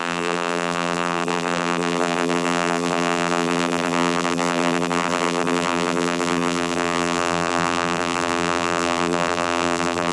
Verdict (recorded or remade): remade